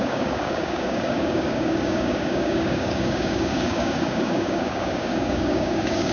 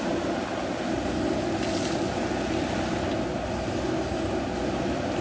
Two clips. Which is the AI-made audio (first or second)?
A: first